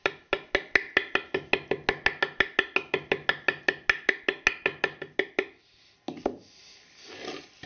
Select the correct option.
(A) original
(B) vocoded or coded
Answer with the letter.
A